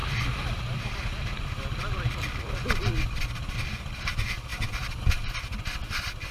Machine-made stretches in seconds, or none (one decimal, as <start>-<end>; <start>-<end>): 0.0-2.4